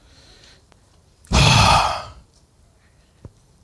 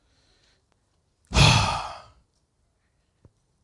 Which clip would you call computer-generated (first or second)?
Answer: first